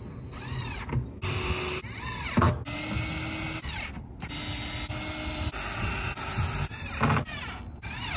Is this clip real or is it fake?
real